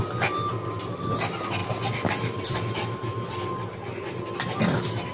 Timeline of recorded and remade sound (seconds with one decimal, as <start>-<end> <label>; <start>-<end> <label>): 0.0-5.1 recorded